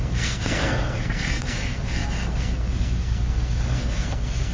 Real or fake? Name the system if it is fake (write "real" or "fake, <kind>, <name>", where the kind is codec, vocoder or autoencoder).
fake, codec, SNAC